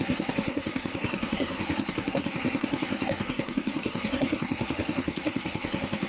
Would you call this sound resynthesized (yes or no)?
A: yes